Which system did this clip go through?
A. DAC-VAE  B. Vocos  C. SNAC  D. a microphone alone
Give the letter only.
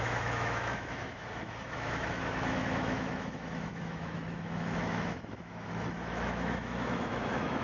A